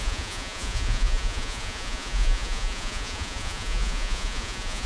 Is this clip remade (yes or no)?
yes